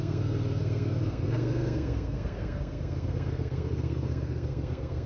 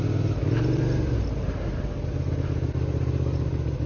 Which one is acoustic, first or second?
second